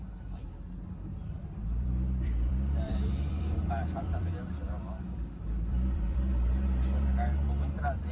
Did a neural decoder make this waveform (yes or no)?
yes